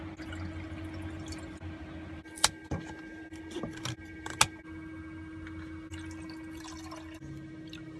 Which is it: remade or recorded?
recorded